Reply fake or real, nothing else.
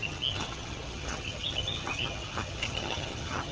fake